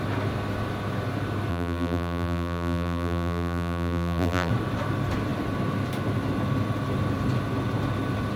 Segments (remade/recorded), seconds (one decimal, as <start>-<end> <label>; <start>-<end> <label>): 0.0-1.5 recorded; 1.5-4.5 remade; 4.5-8.4 recorded